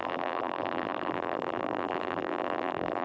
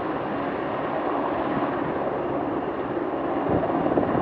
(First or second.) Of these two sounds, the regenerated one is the first